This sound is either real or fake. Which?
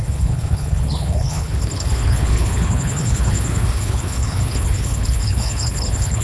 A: fake